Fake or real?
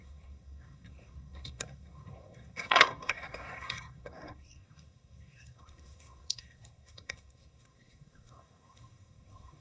fake